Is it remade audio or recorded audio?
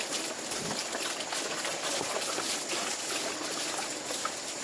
recorded